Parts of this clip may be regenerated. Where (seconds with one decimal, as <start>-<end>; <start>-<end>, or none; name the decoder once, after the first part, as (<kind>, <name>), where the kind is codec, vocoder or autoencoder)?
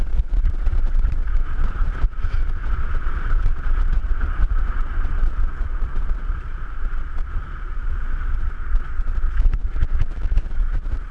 0.0-9.6 (vocoder, Vocos); 10.5-11.1